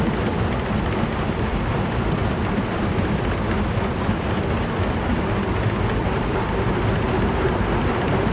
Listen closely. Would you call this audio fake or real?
real